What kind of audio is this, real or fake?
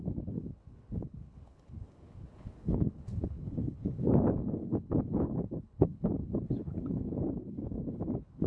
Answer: fake